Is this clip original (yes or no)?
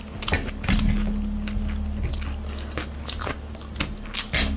yes